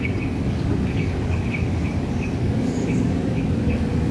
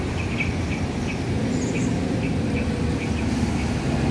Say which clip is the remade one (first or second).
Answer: first